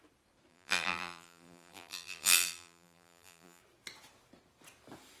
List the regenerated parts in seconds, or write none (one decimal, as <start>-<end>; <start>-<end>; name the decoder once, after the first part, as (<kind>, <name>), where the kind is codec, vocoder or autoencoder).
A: 0.5-3.6 (vocoder, BigVGAN v2)